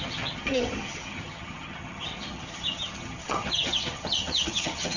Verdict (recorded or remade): remade